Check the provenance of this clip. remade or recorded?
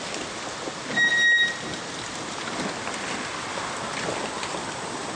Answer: recorded